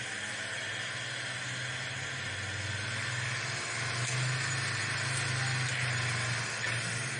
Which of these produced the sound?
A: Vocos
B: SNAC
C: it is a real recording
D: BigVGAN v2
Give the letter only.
C